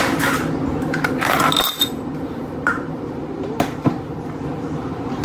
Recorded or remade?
remade